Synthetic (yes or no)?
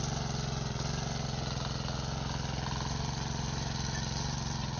no